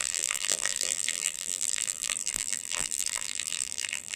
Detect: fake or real fake